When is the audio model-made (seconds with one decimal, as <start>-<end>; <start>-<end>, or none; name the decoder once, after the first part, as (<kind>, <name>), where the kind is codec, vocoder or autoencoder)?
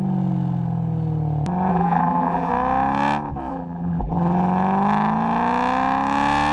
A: 1.7-2.5 (vocoder, BigVGAN v2); 3.5-4.1